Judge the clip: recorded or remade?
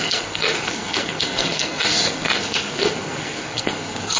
remade